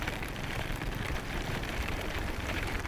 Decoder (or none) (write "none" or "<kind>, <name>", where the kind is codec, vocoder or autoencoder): vocoder, BigVGAN v2